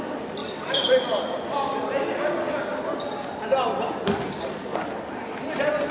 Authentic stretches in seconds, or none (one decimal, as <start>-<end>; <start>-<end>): 0.0-5.9